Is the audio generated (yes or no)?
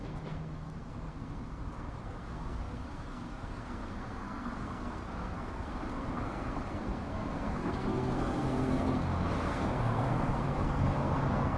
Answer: yes